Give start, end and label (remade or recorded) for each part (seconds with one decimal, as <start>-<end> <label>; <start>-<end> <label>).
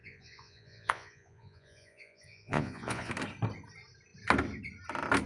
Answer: 0.0-3.1 remade; 3.1-5.3 recorded